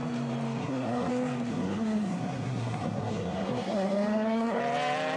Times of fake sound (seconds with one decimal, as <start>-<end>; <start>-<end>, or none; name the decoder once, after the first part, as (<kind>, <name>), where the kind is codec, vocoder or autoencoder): 0.6-1.1 (codec, SNAC); 1.5-4.6